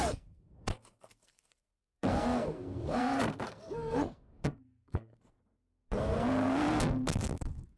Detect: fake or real fake